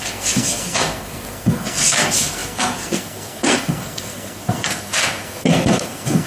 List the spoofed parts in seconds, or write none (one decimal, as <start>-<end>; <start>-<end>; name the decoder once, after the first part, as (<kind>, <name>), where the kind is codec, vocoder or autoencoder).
0.0-6.3 (codec, SNAC)